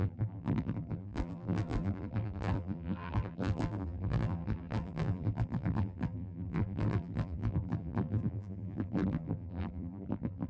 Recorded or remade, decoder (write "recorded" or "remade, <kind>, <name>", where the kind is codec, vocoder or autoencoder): remade, vocoder, BigVGAN v2